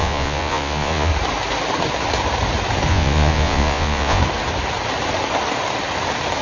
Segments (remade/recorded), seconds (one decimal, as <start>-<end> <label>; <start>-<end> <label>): 0.0-1.1 remade; 1.1-2.9 recorded; 2.9-4.2 remade; 4.2-6.4 recorded